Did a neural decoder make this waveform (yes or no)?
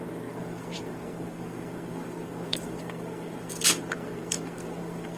yes